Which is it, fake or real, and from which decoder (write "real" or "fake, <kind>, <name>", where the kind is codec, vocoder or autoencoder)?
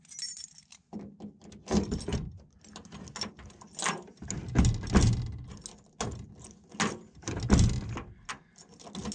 real